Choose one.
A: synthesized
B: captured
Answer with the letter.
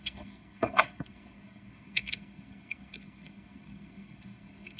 A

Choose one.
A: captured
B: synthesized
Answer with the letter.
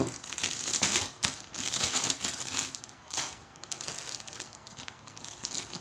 B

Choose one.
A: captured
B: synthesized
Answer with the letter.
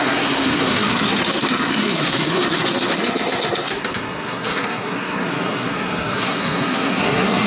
B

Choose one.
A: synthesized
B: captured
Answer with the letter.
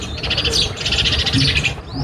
B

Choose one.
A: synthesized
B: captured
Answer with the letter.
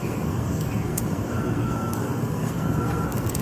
A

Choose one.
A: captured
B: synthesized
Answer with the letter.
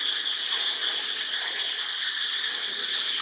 A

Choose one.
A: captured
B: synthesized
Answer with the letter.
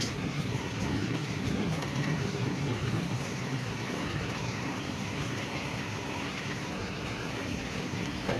B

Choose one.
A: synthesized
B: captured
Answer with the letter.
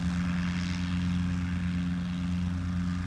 B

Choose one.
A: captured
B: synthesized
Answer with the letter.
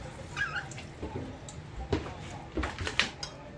A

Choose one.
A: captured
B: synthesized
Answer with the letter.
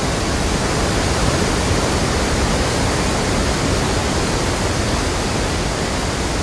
A